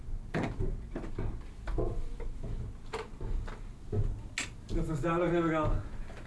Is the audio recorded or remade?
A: recorded